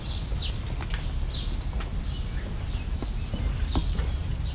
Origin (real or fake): real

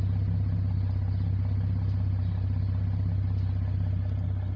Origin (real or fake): real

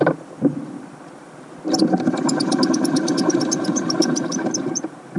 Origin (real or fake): real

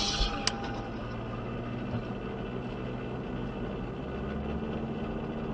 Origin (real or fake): real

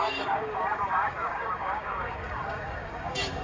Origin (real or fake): fake